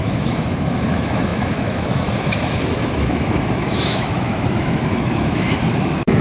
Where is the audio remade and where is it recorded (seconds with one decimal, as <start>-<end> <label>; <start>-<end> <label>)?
0.0-6.2 remade